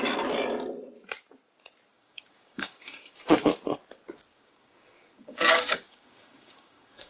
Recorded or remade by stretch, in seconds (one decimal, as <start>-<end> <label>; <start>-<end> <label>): 0.0-1.9 recorded; 1.9-3.2 remade; 3.2-4.3 recorded; 4.3-7.1 remade